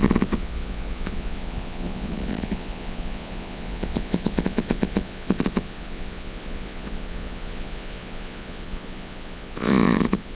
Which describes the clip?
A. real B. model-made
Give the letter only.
B